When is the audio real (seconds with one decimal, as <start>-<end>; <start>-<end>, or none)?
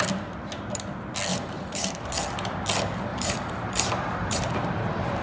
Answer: 0.0-1.3; 2.1-3.1; 4.5-5.2